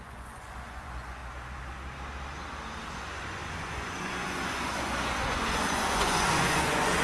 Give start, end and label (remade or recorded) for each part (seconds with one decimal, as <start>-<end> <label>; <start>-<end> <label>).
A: 0.0-1.2 remade; 1.2-2.9 recorded; 2.9-7.0 remade